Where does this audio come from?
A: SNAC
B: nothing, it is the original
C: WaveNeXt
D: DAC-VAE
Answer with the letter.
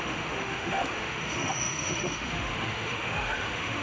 D